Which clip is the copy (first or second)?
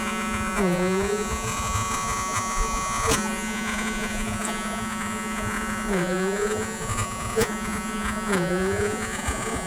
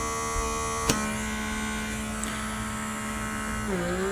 first